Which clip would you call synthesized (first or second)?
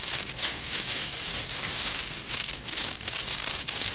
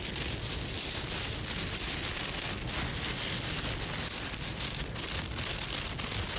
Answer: first